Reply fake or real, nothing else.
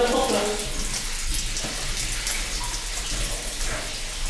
real